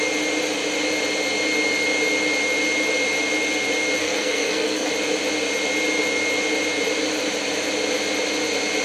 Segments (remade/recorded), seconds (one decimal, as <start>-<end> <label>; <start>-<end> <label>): 0.0-4.0 recorded; 4.0-4.9 remade; 4.9-8.8 recorded